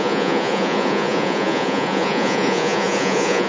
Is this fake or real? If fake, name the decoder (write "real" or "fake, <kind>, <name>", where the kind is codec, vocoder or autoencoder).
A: fake, vocoder, Vocos